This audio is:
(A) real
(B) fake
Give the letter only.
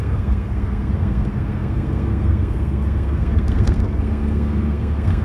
B